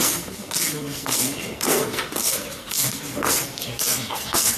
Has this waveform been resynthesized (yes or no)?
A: yes